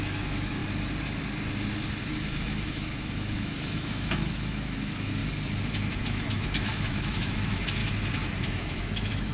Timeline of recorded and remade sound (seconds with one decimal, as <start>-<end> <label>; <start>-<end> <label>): 0.0-0.6 remade; 0.6-2.0 recorded; 2.0-5.2 remade; 5.2-6.0 recorded; 6.0-7.8 remade; 7.8-8.5 recorded; 8.5-9.3 remade